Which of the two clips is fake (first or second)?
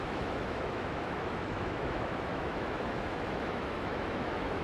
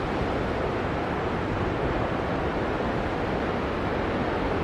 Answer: first